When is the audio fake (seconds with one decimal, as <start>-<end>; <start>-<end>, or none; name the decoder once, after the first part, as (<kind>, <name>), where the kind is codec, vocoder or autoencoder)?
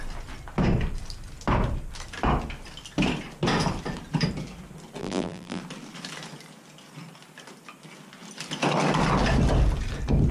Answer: 5.0-5.6 (vocoder, BigVGAN v2)